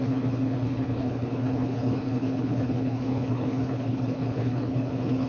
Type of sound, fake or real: fake